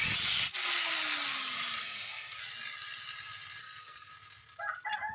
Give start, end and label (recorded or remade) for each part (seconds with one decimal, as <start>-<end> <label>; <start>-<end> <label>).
0.0-1.8 recorded; 1.8-2.4 remade; 2.4-3.6 recorded; 3.6-4.1 remade; 4.1-5.1 recorded